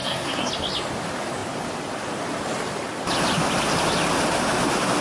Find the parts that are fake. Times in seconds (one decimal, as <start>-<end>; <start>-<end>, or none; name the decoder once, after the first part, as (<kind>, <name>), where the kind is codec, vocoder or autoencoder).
0.0-0.5 (codec, SNAC)